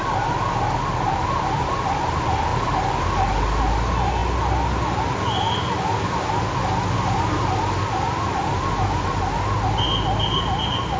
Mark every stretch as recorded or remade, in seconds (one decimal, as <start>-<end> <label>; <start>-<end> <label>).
0.0-11.0 recorded